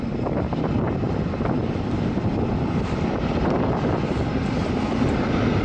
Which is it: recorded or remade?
recorded